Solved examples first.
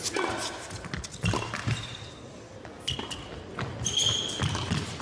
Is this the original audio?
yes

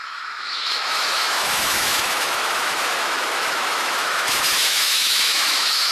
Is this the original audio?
no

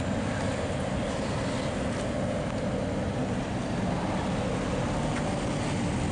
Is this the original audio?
yes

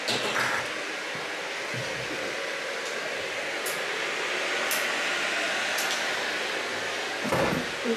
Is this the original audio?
yes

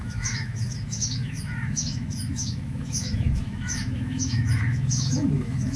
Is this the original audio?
no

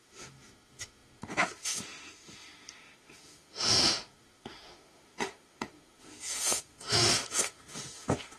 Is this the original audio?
no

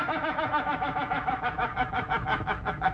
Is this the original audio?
no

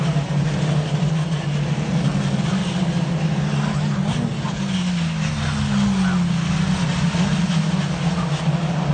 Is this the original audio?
yes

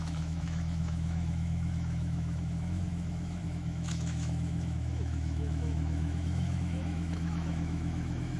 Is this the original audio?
no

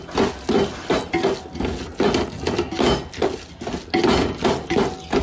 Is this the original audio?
yes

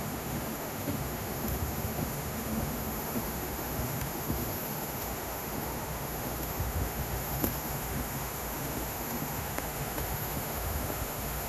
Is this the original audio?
no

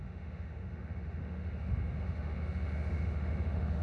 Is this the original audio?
no